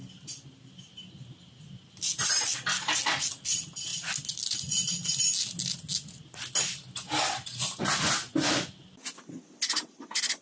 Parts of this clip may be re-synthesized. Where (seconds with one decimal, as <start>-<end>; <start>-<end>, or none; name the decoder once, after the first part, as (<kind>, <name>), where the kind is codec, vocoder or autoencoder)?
none